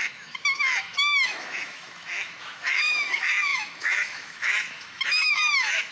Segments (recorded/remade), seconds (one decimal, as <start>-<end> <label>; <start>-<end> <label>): 0.0-5.9 remade